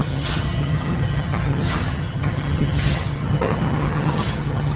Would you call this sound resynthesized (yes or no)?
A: yes